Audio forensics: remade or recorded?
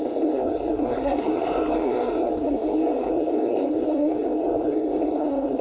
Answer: remade